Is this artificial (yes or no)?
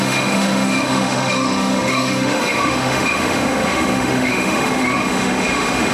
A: yes